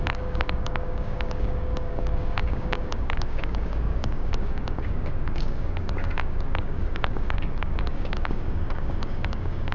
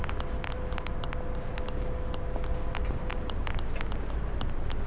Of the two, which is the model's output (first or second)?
first